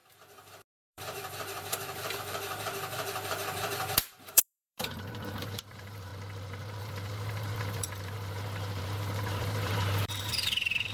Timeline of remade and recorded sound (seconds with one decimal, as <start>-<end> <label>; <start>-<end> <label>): 0.0-6.1 remade; 6.1-6.8 recorded; 6.8-10.9 remade